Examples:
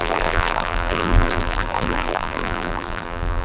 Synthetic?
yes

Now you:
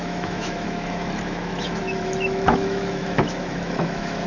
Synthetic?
yes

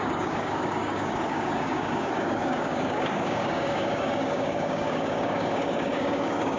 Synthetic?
yes